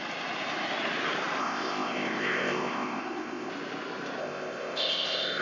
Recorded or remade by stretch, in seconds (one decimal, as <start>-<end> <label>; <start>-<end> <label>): 0.0-1.4 recorded; 1.4-3.5 remade; 3.5-4.2 recorded; 4.2-5.4 remade